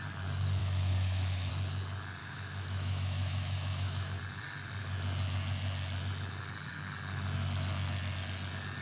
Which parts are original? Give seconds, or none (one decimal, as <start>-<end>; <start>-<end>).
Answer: 0.0-0.6; 1.5-2.2; 4.2-8.8

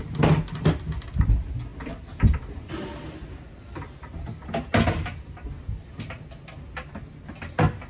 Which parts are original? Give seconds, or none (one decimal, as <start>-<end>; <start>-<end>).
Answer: 0.0-7.9

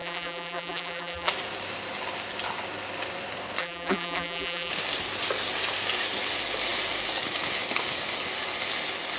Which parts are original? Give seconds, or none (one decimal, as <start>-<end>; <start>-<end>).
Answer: 1.3-3.6; 4.7-9.2